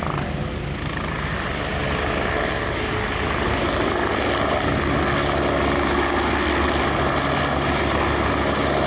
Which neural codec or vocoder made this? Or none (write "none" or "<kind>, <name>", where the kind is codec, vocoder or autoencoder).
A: none